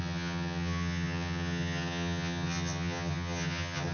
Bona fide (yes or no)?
no